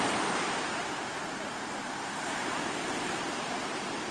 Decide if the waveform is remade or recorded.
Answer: remade